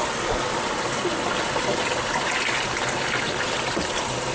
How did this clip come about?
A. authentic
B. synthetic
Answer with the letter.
A